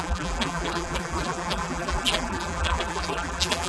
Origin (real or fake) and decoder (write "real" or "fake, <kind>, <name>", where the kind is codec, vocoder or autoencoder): fake, vocoder, BigVGAN v2